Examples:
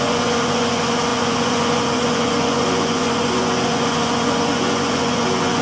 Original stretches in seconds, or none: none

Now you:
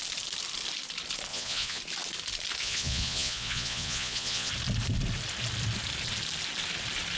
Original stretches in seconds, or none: 0.0-1.3; 1.8-2.6; 4.5-7.2

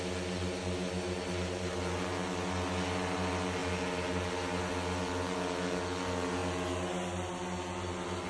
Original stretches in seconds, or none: 0.0-8.3